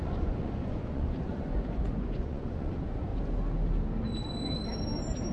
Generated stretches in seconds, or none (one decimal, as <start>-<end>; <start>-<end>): 0.0-3.1